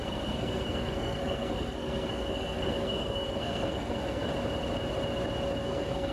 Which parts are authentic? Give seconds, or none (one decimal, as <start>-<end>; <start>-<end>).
4.3-5.6